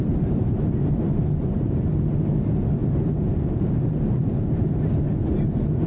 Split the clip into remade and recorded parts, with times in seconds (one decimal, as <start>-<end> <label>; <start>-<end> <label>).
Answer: 0.0-1.8 remade; 1.8-2.8 recorded; 2.8-4.9 remade; 4.9-5.9 recorded